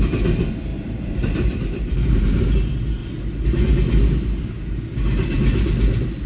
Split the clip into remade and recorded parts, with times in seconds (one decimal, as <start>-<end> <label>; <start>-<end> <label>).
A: 0.0-0.7 recorded; 0.7-2.4 remade; 2.4-3.0 recorded; 3.0-3.6 remade; 3.6-6.3 recorded